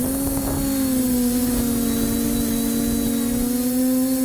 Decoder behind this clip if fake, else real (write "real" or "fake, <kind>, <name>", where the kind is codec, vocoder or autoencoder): real